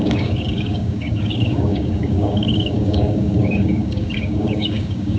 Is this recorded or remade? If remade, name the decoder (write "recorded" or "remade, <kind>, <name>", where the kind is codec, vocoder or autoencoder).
remade, codec, DAC